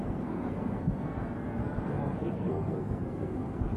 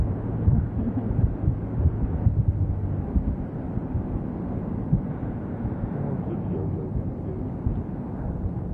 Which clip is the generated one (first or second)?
first